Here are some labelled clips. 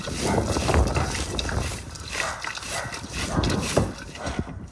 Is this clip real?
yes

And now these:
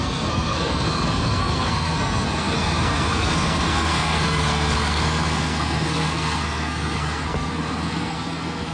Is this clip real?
no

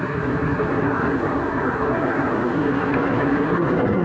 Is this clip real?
no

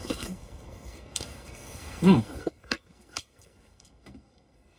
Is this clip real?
no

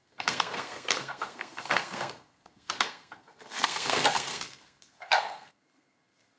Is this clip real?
no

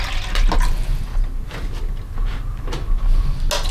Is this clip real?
yes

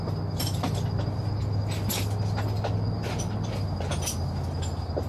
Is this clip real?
yes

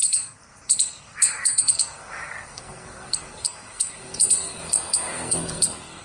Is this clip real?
no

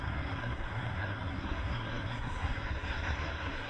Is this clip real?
no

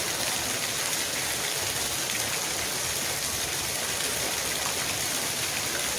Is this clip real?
yes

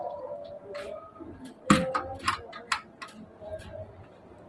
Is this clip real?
yes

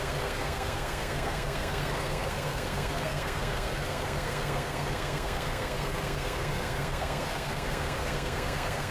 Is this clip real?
no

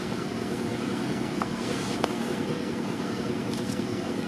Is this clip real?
no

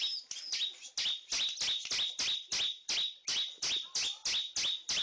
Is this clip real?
yes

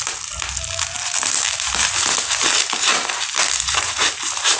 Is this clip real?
yes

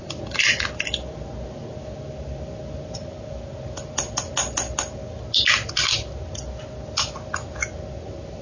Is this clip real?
yes